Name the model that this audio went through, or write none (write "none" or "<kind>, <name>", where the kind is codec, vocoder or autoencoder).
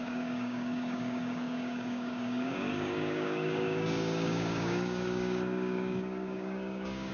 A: codec, DAC